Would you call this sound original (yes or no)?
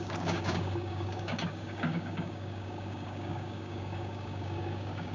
no